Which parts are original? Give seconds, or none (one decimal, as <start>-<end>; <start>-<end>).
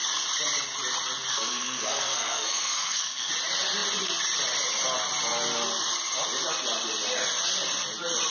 0.0-1.3; 3.3-8.3